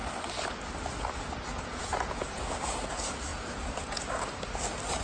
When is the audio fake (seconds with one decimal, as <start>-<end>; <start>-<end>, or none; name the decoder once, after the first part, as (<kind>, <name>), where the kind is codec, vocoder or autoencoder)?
1.5-2.6 (vocoder, Vocos); 3.3-4.0